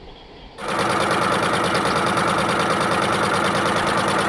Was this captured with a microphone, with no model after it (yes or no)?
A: no